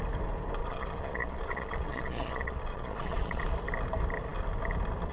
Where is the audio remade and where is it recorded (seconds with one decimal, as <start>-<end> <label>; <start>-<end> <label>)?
0.0-0.6 recorded; 0.6-3.4 remade; 3.4-5.1 recorded